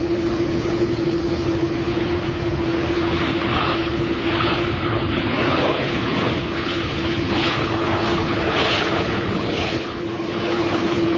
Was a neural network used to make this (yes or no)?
yes